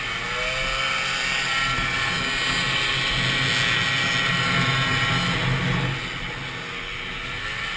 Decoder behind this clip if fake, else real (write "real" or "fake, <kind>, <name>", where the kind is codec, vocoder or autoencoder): real